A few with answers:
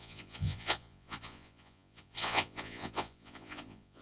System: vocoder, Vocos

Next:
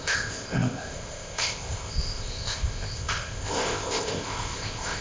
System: codec, ZipCodec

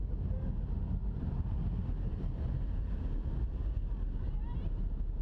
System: none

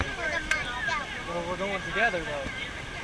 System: none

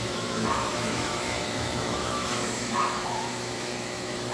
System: autoencoder, DAC-VAE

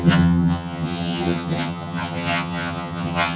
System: vocoder, HiFi-GAN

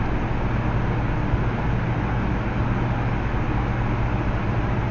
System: none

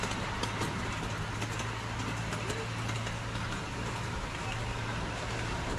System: none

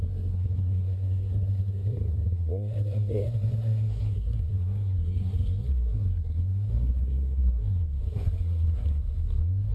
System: codec, SNAC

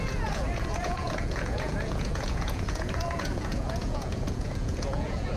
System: vocoder, Vocos